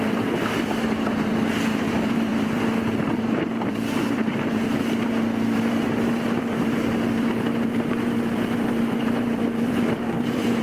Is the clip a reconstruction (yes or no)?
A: yes